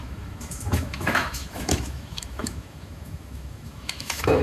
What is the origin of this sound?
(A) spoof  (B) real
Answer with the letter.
A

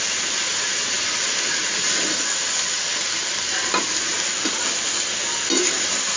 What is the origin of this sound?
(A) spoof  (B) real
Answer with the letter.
B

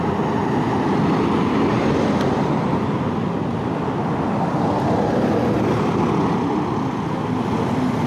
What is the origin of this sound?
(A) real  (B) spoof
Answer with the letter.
A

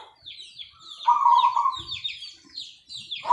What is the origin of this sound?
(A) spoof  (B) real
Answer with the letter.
B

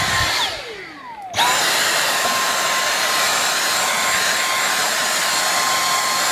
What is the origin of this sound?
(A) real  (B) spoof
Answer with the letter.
A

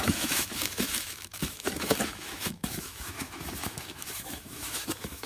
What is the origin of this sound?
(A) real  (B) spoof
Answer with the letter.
B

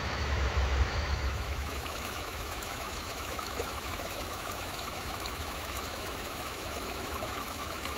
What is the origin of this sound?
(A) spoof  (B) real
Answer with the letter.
A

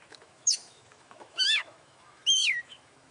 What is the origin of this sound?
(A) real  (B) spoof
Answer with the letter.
B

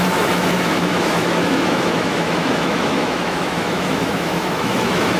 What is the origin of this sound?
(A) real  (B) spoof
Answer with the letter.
B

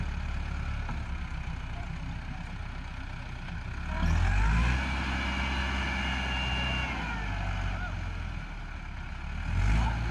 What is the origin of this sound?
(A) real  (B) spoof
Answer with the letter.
A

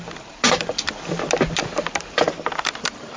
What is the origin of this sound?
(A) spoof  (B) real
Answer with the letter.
B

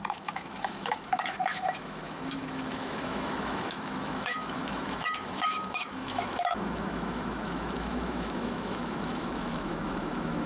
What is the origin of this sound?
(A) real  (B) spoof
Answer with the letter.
B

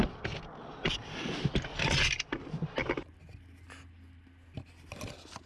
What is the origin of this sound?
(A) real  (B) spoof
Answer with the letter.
A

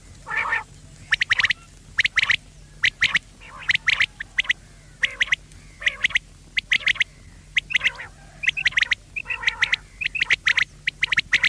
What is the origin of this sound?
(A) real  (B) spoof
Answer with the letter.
A